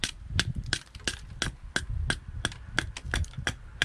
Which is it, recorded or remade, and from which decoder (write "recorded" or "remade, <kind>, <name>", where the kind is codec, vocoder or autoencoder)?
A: recorded